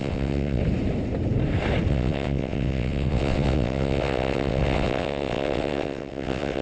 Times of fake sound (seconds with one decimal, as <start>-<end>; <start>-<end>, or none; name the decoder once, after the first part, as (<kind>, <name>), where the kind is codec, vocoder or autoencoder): 0.0-0.6 (vocoder, WaveNeXt); 1.9-6.6